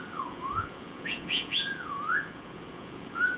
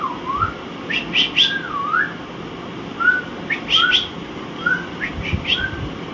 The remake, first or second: first